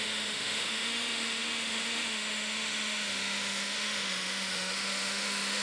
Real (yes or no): no